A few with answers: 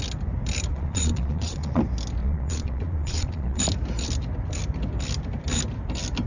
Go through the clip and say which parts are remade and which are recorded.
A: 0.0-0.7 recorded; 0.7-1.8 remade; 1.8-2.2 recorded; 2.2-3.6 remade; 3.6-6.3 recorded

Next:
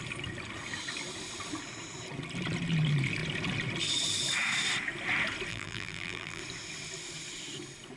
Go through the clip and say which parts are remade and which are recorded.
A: 0.0-5.5 recorded; 5.5-6.4 remade; 6.4-8.0 recorded

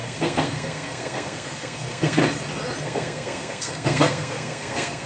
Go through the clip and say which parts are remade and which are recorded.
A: 0.0-2.2 remade; 2.2-2.8 recorded; 2.8-5.1 remade

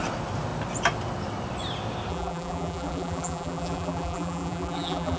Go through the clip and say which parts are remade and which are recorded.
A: 0.0-2.1 recorded; 2.1-5.2 remade

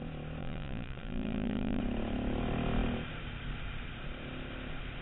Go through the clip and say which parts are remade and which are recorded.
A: 0.0-0.4 recorded; 0.4-1.8 remade; 1.8-5.0 recorded

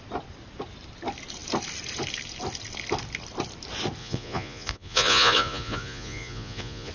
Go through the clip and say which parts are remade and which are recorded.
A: 0.0-4.0 recorded; 4.0-6.9 remade

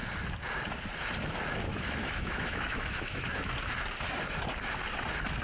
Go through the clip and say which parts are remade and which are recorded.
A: 0.0-1.7 recorded; 1.7-3.5 remade; 3.5-5.4 recorded

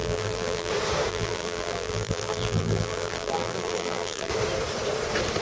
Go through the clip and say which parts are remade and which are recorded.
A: 0.0-0.7 remade; 0.7-1.1 recorded; 1.1-4.3 remade; 4.3-5.4 recorded